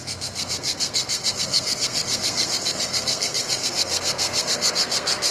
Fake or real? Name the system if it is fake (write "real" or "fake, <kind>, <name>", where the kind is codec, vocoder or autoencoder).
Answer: fake, codec, SNAC